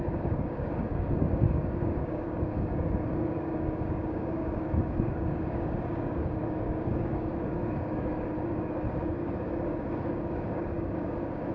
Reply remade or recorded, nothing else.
remade